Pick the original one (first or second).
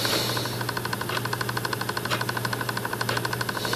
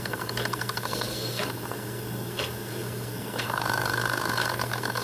first